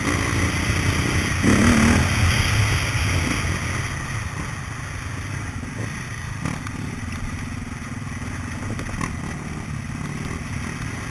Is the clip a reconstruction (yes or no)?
no